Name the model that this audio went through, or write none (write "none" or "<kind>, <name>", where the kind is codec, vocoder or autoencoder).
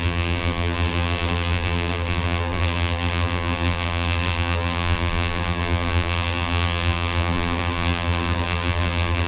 vocoder, BigVGAN v2